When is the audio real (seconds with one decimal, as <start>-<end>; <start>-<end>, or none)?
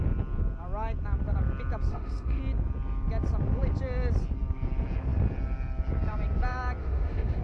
0.0-1.9; 2.4-6.8